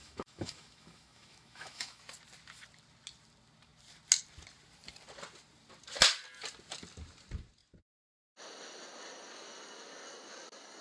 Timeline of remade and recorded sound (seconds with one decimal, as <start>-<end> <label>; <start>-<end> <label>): 0.0-2.0 remade; 2.0-10.8 recorded

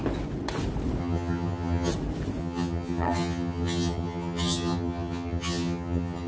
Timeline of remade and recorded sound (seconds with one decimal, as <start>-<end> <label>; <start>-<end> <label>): 0.0-1.0 recorded; 1.0-1.9 remade; 1.9-2.4 recorded; 2.4-6.3 remade

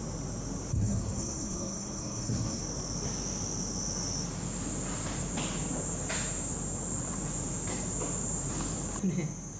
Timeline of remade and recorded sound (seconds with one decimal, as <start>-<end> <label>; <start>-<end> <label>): 0.0-0.7 recorded; 0.7-2.6 remade; 2.6-9.6 recorded

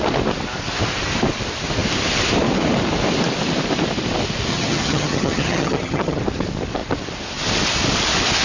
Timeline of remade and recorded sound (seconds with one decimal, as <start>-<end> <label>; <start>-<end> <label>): 0.0-4.5 recorded; 4.5-6.2 remade; 6.2-8.4 recorded

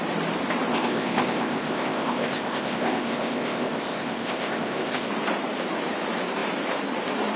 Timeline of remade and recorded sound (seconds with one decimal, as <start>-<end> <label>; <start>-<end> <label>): 0.0-0.7 recorded; 0.7-5.1 remade; 5.1-7.4 recorded